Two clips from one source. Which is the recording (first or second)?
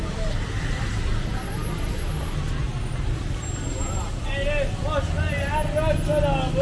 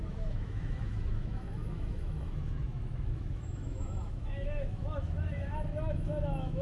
first